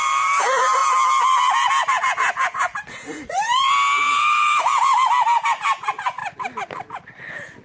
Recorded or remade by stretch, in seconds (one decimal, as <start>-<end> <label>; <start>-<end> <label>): 0.0-6.2 remade; 6.2-7.6 recorded